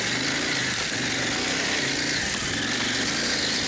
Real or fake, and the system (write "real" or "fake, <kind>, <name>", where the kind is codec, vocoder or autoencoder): real